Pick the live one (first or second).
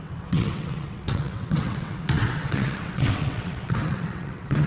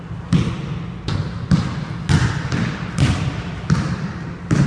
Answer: second